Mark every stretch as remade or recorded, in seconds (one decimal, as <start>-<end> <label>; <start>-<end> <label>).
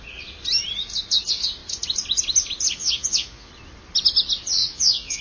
0.0-2.8 recorded; 2.8-3.5 remade; 3.5-4.6 recorded; 4.6-5.2 remade